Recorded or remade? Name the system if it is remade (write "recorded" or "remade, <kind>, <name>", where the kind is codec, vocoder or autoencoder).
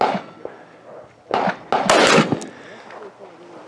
recorded